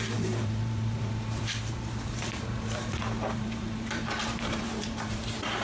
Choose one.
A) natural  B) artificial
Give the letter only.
B